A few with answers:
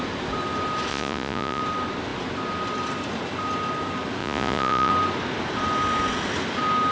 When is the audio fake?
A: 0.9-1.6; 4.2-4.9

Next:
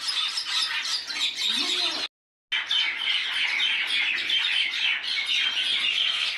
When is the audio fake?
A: 5.9-6.4